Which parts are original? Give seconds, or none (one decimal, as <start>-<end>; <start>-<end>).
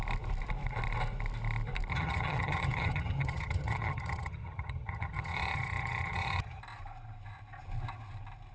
0.0-1.9; 6.6-8.5